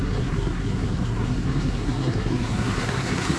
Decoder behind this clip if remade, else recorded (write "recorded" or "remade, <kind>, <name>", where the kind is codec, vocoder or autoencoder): remade, codec, SNAC